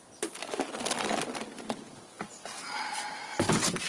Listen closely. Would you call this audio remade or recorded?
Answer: recorded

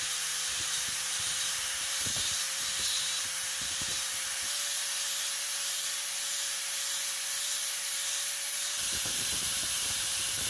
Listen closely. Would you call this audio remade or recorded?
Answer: remade